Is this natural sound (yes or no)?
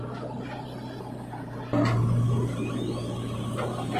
yes